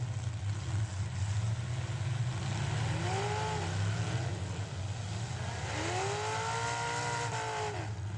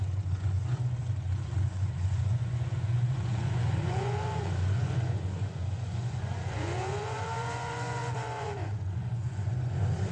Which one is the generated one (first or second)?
second